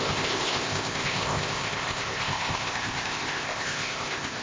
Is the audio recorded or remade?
remade